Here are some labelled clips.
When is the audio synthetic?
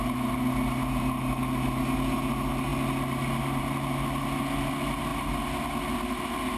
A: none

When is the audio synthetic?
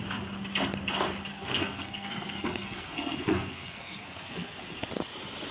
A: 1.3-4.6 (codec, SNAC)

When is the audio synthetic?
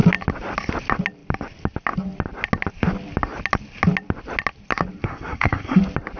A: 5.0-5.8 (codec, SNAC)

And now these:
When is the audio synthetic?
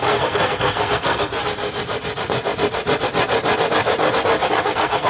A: 0.0-1.4 (codec, SNAC); 4.5-5.1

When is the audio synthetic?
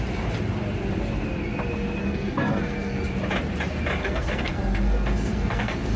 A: 2.0-3.0 (codec, SNAC); 4.0-6.0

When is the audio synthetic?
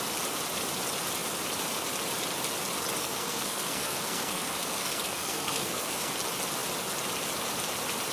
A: 3.0-6.1 (codec, SNAC)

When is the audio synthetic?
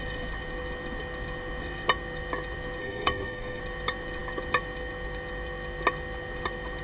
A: 2.8-3.6 (codec, SNAC)